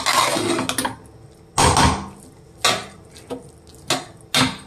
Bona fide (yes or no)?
yes